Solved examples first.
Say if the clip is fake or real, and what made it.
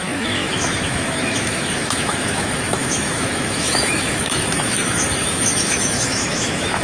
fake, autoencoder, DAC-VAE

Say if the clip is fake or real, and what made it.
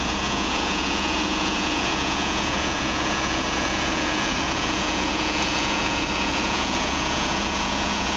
fake, vocoder, Vocos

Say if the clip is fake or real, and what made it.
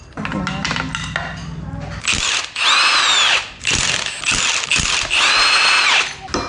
real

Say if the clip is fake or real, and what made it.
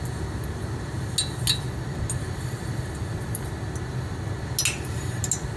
real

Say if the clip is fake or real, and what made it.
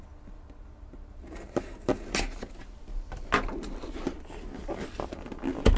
real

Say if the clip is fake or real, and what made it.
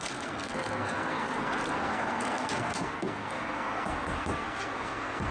fake, codec, SNAC